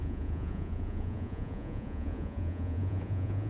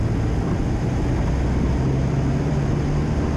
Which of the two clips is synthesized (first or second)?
first